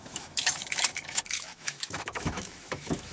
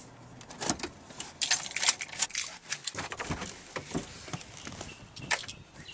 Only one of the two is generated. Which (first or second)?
first